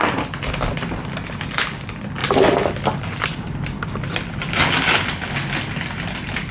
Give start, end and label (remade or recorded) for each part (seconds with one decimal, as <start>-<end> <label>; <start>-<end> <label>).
0.0-6.5 recorded